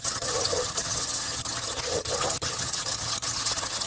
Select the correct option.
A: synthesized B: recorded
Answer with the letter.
A